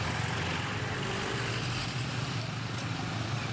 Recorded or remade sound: recorded